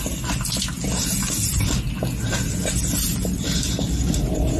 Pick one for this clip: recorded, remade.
recorded